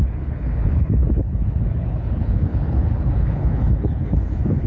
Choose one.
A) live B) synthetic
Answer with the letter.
B